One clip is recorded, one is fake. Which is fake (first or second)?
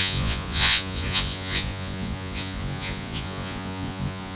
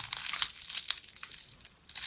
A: first